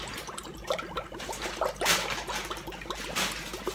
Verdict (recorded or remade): recorded